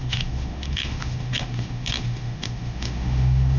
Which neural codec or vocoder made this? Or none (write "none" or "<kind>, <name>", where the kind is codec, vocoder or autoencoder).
autoencoder, DAC-VAE